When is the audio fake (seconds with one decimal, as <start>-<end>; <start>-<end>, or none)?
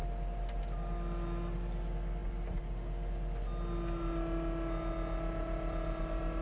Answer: none